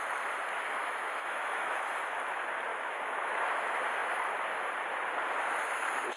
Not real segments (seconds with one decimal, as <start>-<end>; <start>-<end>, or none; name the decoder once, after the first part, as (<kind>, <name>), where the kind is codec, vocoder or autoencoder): 0.8-1.9 (autoencoder, DAC-VAE); 2.7-3.6